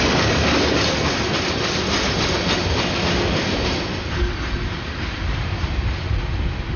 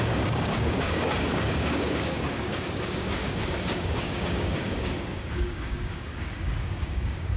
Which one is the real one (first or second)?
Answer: first